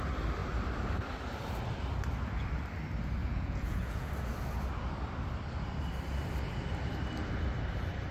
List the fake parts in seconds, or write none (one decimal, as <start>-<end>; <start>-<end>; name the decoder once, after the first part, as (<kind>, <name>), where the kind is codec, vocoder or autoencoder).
3.2-4.1 (vocoder, Vocos)

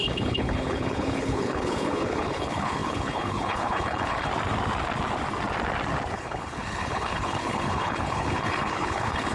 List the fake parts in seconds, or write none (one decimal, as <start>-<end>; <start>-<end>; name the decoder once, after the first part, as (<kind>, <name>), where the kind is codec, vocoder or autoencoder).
0.0-4.3 (codec, HILCodec); 6.1-9.3

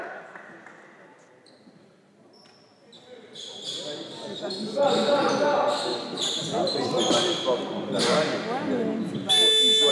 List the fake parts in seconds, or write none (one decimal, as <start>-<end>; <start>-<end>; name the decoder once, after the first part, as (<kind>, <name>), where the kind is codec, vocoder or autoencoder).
2.9-4.4 (vocoder, BigVGAN v2)

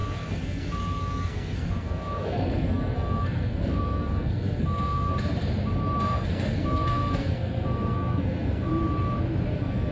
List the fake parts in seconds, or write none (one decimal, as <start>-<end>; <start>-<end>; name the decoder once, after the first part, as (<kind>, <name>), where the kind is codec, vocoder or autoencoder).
0.0-5.1 (codec, SNAC); 6.0-8.7; 9.5-9.9